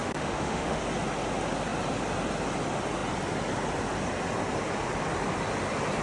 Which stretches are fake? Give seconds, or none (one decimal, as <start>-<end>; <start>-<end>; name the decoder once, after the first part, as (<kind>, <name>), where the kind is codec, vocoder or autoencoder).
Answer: 0.0-0.8 (autoencoder, DAC-VAE)